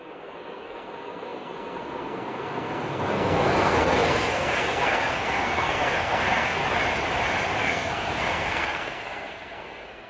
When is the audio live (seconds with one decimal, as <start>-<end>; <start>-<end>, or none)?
6.6-7.6